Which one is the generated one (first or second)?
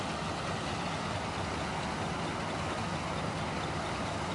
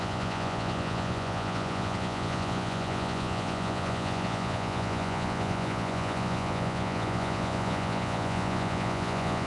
second